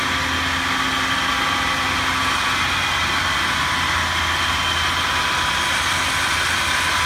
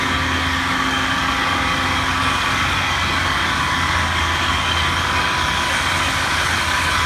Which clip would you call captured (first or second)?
first